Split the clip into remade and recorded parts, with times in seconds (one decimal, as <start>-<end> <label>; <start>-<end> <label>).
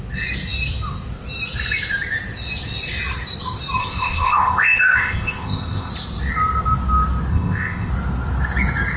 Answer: 0.0-3.8 recorded; 3.8-5.9 remade; 5.9-7.3 recorded; 7.3-7.9 remade; 7.9-9.0 recorded